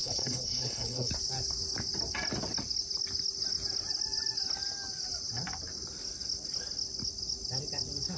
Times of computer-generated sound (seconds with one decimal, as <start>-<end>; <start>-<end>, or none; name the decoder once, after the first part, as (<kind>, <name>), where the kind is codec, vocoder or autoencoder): 0.0-1.1 (codec, HILCodec)